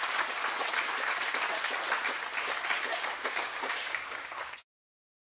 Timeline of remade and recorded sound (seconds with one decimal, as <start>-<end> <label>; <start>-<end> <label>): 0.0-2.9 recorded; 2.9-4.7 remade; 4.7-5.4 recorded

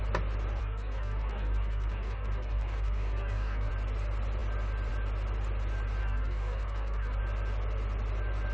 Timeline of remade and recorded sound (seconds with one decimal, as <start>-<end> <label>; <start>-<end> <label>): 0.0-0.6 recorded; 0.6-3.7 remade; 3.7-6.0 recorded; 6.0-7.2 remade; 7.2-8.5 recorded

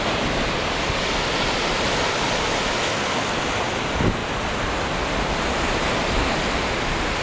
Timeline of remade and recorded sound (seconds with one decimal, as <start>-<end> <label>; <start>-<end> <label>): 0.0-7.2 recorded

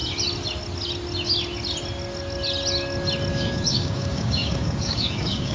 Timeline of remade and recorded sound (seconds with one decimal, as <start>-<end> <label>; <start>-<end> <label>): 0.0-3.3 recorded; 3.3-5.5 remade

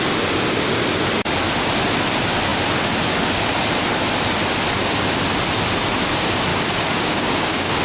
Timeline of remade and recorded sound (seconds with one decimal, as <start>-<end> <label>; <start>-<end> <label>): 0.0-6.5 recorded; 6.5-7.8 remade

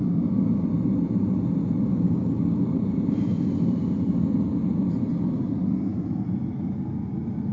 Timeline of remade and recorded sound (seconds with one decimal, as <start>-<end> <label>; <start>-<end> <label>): 0.0-1.9 recorded; 1.9-2.6 remade; 2.6-7.5 recorded

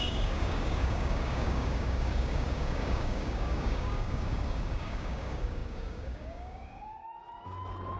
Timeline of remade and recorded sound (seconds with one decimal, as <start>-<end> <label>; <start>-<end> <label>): 0.0-7.0 remade; 7.0-8.0 recorded